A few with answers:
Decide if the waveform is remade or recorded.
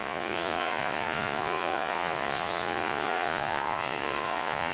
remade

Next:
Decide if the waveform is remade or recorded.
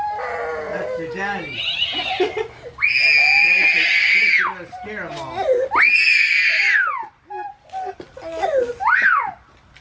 recorded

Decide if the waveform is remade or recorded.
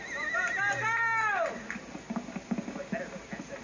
recorded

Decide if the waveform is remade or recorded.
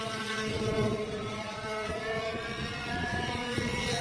remade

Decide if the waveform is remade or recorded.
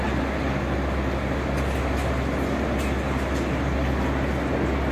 recorded